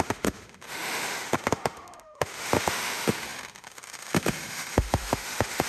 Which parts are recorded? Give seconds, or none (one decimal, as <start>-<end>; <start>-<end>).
none